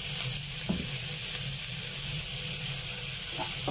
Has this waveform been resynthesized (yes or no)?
no